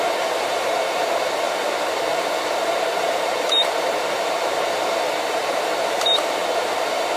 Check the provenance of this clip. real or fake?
fake